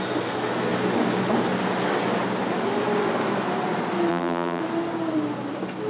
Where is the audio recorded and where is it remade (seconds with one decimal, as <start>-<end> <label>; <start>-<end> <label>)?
0.0-4.1 recorded; 4.1-4.6 remade; 4.6-5.9 recorded